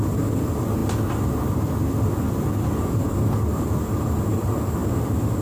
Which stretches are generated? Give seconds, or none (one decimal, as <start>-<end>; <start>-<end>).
0.0-0.8; 2.4-5.4